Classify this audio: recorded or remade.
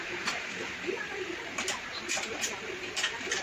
remade